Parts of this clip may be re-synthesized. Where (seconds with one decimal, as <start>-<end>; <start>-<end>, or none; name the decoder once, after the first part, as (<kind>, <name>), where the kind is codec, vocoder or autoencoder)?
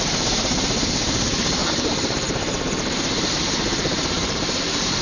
0.0-5.0 (vocoder, BigVGAN v2)